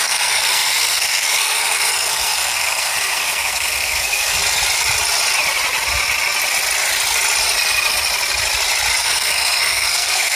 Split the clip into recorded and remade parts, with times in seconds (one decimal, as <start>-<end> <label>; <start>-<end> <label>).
0.0-4.4 remade; 4.4-9.0 recorded; 9.0-10.4 remade